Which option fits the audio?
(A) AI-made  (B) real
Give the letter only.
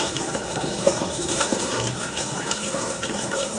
A